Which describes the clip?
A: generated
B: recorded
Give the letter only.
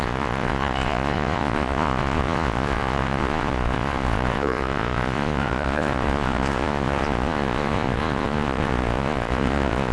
A